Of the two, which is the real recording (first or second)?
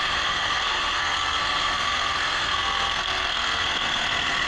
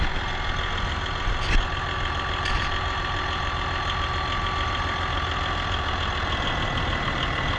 second